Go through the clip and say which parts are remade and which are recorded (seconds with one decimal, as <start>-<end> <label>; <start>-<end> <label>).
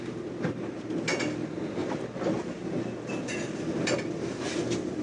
0.0-5.0 recorded